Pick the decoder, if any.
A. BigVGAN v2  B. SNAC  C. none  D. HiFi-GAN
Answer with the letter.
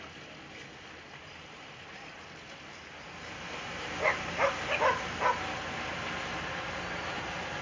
C